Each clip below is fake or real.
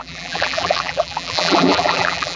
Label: fake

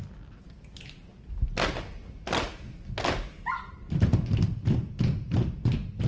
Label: real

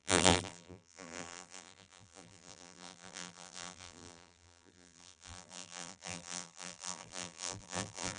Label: fake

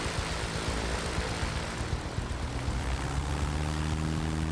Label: real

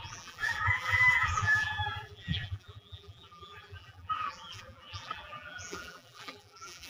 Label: fake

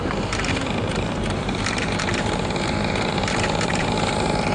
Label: fake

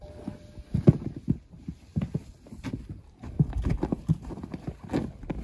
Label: real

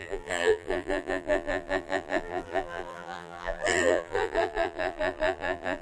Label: fake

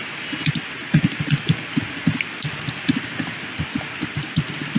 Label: real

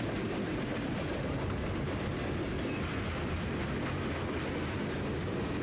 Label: real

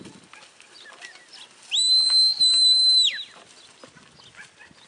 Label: real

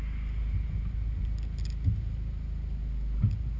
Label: real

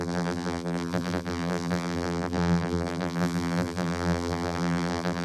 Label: fake